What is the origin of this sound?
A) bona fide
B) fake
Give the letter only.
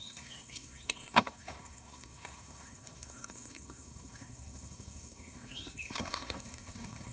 B